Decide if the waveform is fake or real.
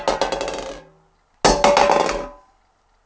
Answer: real